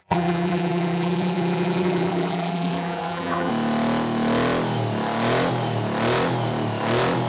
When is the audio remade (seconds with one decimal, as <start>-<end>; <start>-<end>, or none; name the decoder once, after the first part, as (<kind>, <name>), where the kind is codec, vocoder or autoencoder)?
0.0-3.5 (vocoder, BigVGAN v2)